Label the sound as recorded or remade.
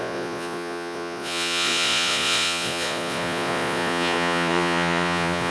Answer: remade